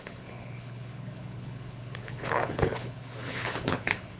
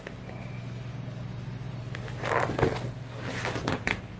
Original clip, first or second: second